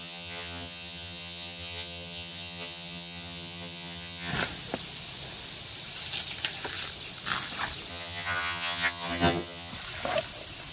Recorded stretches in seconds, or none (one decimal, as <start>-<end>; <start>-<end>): 4.3-7.9; 9.7-10.7